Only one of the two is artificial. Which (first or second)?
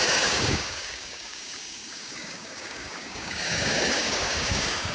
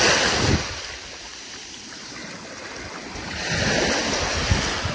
first